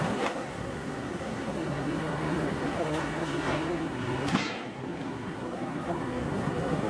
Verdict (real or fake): fake